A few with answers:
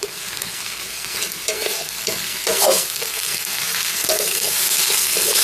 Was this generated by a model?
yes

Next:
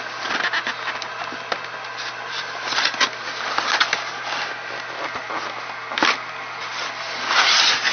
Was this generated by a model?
no